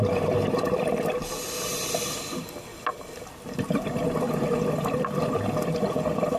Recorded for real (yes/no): yes